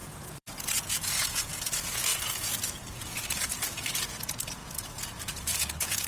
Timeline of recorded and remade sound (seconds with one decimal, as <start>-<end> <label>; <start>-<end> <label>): 0.0-6.1 remade